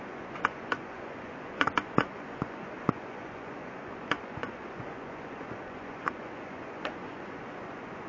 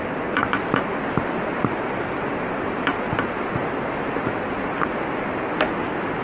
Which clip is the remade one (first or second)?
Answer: first